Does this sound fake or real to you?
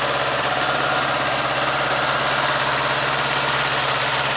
real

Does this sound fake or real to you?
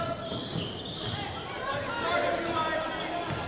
real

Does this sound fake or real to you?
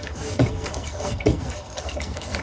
fake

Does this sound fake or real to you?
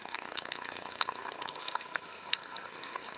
fake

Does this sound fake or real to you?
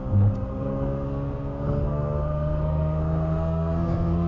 fake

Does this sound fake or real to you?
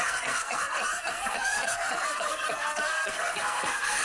fake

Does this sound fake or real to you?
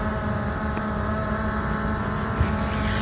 real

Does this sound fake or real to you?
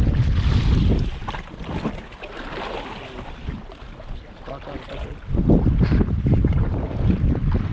real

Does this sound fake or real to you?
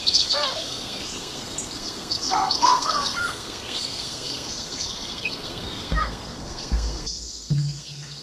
fake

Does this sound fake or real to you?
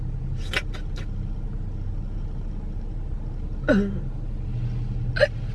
real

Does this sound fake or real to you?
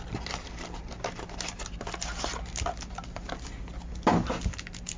real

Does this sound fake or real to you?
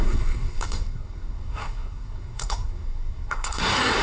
fake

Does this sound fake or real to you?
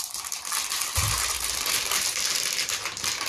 real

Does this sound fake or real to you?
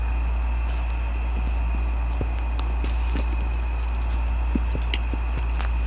real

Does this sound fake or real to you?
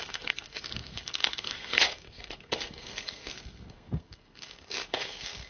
fake